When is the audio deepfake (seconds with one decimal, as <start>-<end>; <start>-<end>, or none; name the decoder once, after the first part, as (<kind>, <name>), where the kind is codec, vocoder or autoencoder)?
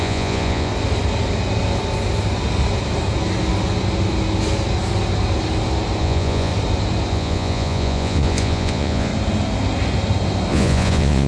0.0-0.7 (vocoder, Vocos); 6.0-6.5; 7.1-9.1; 10.5-11.3